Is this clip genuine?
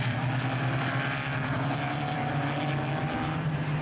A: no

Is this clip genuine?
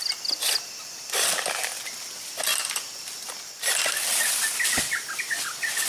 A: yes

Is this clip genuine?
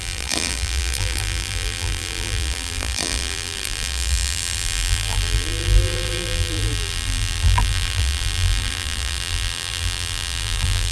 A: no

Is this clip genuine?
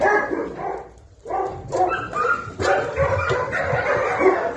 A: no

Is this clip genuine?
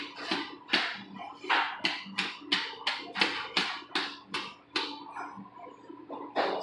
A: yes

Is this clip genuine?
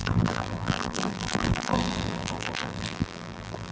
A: no